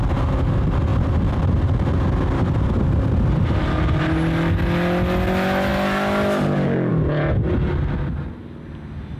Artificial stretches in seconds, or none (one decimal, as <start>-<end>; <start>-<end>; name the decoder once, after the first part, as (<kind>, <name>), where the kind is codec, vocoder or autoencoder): 0.9-1.6 (vocoder, BigVGAN v2)